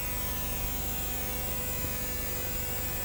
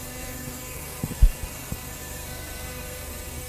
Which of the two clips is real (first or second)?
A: first